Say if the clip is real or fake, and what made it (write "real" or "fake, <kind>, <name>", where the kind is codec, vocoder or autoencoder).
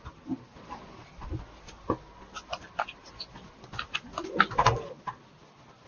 real